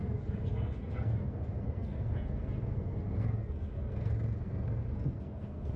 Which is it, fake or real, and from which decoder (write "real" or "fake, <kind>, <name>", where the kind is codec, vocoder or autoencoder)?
fake, codec, SNAC